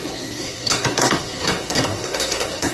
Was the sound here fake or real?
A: fake